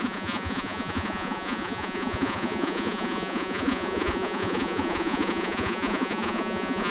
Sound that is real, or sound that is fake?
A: fake